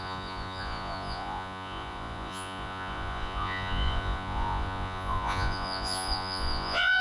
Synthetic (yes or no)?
yes